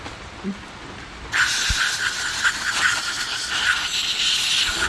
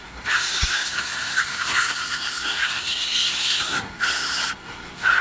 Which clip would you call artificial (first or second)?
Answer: second